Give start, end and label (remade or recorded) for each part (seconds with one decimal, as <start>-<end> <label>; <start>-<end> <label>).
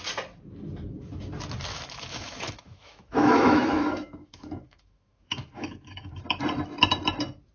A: 0.0-1.7 recorded; 1.7-6.2 remade; 6.2-7.5 recorded